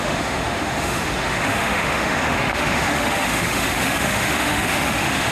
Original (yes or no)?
no